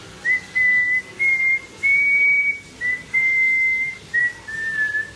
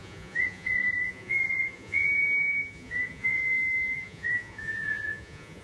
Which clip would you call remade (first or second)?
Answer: second